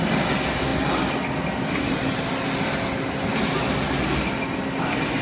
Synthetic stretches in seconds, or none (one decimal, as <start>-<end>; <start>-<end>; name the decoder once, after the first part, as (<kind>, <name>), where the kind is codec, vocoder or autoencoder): none